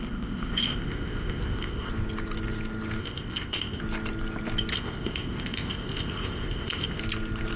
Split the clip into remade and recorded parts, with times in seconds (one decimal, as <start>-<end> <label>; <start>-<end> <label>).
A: 0.0-1.9 remade; 1.9-3.0 recorded; 3.0-3.8 remade; 3.8-4.7 recorded; 4.7-7.0 remade; 7.0-7.6 recorded